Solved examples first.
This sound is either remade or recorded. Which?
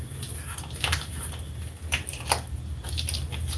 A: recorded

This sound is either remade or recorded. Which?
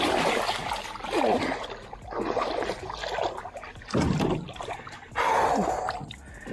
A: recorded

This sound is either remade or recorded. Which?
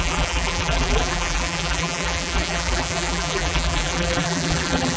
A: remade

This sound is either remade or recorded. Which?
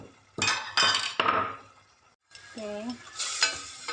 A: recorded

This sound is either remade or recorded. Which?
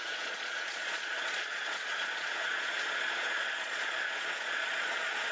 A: remade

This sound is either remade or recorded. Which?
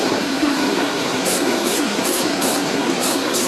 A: remade